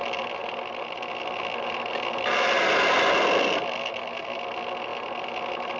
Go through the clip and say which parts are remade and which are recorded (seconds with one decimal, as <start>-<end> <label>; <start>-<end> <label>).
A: 0.0-5.8 recorded